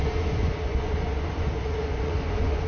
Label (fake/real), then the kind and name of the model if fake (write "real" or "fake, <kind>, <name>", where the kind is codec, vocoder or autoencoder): fake, vocoder, Vocos